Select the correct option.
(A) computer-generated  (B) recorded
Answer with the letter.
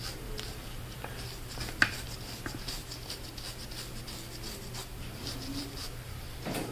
B